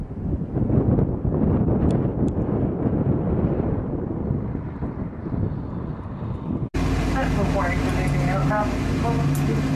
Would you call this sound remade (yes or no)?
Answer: no